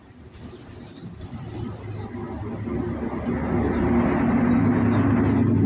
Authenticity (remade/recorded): recorded